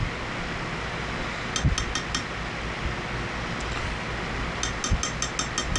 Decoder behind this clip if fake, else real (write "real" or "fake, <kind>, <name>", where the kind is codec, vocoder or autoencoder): real